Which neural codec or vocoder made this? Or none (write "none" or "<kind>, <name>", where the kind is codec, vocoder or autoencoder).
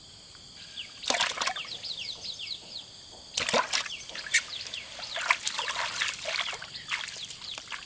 none